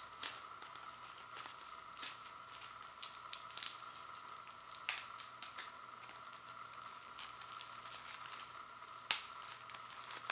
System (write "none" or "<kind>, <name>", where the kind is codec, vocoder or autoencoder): none